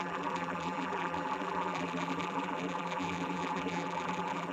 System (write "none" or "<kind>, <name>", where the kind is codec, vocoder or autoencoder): vocoder, BigVGAN v2